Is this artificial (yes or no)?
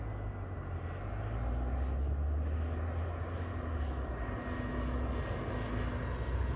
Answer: no